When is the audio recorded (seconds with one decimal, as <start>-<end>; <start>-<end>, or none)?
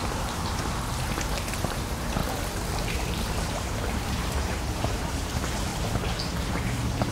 2.2-2.8; 5.7-6.5